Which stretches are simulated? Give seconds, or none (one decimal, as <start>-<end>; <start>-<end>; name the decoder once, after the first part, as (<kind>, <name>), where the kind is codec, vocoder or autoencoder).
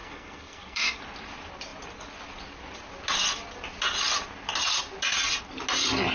0.0-1.0 (codec, SNAC)